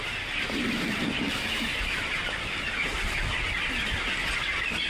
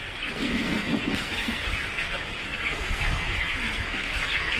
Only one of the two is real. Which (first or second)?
first